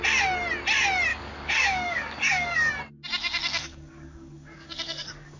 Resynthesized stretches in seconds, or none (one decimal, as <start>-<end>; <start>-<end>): 1.1-2.7; 3.2-5.4